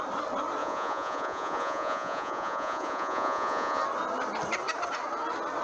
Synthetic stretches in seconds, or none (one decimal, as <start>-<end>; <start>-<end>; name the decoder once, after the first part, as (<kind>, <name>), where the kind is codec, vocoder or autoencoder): 0.6-3.8 (vocoder, Vocos)